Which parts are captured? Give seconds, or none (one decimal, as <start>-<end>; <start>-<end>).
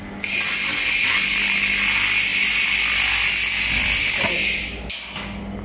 0.0-5.6